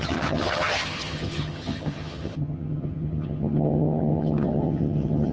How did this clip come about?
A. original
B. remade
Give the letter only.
B